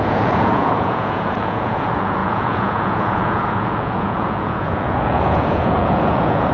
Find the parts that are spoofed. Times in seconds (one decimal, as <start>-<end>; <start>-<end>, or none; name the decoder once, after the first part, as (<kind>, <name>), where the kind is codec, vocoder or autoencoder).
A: 0.0-6.5 (vocoder, Vocos)